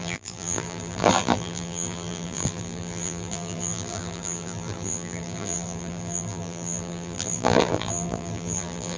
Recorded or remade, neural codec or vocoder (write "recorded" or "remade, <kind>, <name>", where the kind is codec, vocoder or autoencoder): remade, vocoder, BigVGAN v2